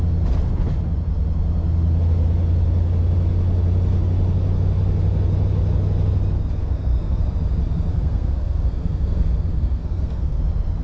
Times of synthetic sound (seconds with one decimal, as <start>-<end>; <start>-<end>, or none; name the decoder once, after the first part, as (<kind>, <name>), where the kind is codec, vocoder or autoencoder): 6.6-7.2 (codec, SNAC); 7.9-10.4